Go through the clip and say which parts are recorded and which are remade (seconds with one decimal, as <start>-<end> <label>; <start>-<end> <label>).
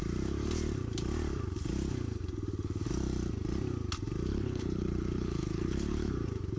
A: 0.0-4.3 recorded; 4.3-6.1 remade; 6.1-6.6 recorded